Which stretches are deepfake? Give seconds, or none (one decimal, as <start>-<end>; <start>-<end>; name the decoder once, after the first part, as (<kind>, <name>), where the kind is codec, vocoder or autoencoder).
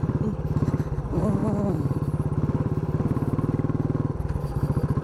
0.0-5.0 (vocoder, BigVGAN v2)